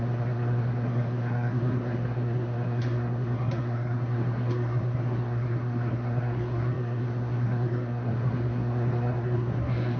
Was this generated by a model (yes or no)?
yes